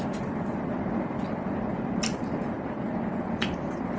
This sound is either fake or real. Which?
real